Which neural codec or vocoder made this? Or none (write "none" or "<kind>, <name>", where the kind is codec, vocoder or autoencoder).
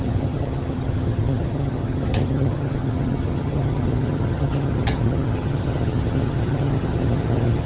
vocoder, HiFi-GAN